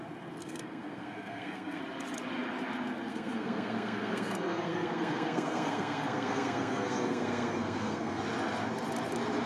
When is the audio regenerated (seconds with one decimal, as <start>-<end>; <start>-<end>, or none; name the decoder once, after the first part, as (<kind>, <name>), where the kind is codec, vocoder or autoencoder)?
0.4-1.8 (codec, SNAC); 3.1-8.2